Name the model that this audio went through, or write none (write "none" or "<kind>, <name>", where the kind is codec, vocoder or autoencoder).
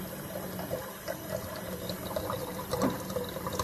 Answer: none